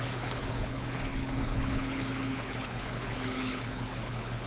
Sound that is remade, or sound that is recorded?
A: remade